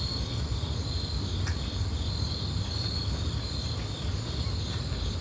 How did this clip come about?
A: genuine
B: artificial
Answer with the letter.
A